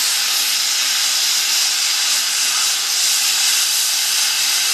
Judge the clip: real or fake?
real